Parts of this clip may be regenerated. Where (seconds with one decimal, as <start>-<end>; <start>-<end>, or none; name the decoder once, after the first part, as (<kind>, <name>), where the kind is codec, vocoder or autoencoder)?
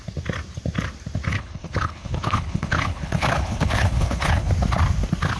1.3-4.5 (codec, HILCodec)